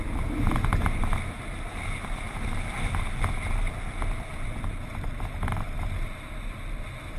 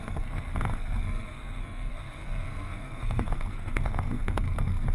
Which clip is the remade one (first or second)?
second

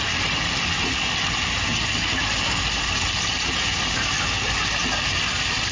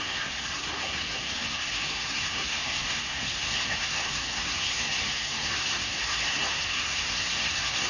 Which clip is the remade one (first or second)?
second